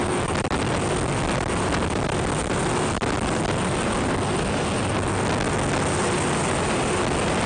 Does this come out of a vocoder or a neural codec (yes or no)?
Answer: no